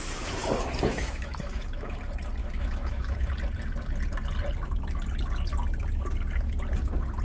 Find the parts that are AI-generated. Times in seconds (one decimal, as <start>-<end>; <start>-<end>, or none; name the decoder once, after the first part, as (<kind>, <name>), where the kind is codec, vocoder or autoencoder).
0.9-2.0 (autoencoder, DAC-VAE); 2.4-3.3